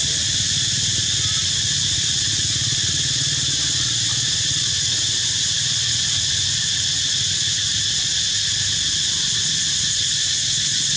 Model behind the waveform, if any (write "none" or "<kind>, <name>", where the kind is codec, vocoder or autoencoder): none